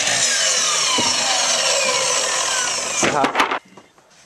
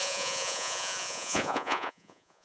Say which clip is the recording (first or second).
first